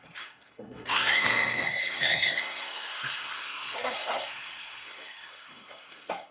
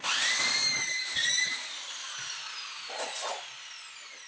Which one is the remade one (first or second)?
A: first